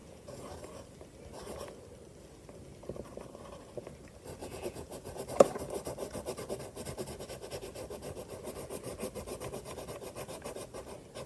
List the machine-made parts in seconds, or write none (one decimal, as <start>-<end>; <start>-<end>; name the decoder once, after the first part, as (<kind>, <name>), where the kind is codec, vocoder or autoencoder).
0.0-0.6 (vocoder, Vocos); 4.4-5.2